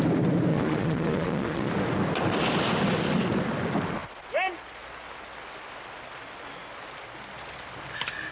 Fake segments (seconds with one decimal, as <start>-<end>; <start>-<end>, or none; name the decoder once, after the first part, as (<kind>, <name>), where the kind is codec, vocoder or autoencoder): 0.5-1.7 (vocoder, Vocos)